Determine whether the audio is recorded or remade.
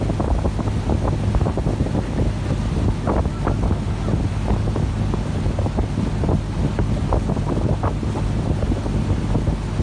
recorded